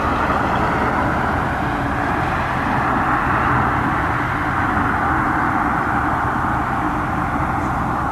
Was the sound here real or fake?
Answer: real